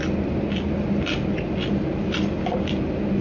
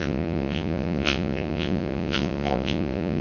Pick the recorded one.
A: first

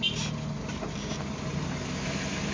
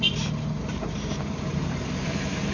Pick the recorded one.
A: first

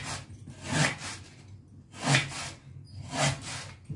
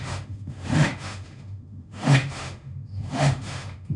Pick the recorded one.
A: first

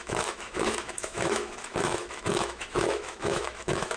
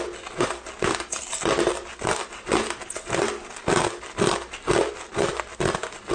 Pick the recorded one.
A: second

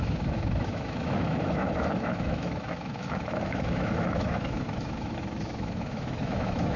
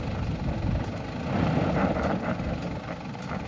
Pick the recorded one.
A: second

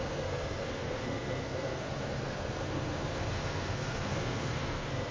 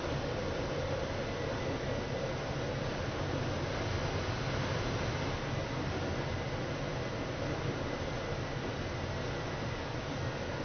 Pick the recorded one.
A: second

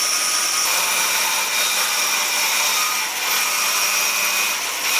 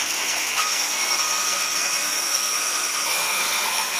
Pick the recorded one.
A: first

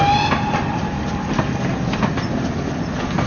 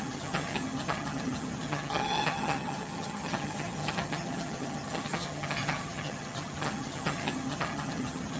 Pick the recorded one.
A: first